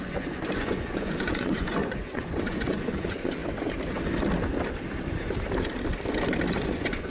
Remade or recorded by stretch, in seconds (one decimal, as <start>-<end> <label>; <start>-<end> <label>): 0.0-3.4 remade; 3.4-6.5 recorded; 6.5-7.1 remade